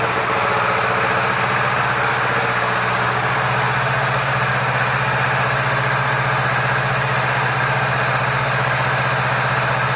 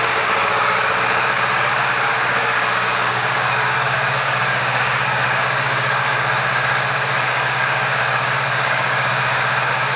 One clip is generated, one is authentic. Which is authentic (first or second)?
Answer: first